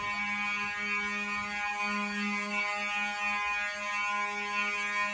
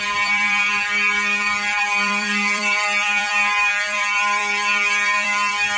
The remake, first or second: second